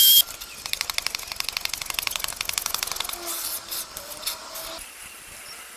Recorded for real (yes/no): yes